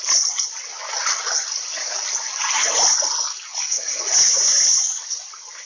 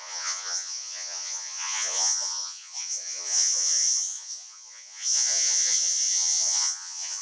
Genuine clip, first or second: first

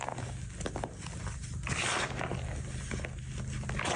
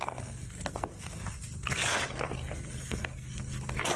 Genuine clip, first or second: first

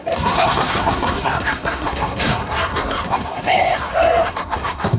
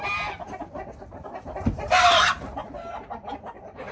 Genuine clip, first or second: second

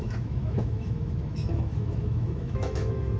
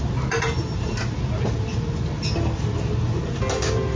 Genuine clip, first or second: second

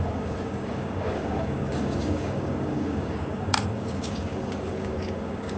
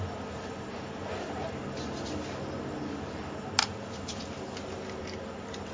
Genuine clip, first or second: second